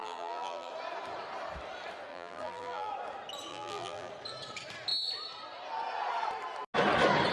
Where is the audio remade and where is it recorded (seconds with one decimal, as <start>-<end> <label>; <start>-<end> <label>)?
0.0-0.7 remade; 0.7-2.1 recorded; 2.1-2.9 remade; 2.9-3.5 recorded; 3.5-4.1 remade; 4.1-7.3 recorded